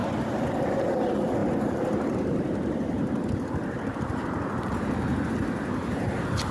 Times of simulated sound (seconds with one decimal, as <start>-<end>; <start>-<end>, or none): none